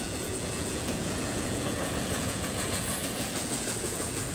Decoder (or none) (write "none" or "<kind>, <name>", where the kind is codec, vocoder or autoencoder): vocoder, Vocos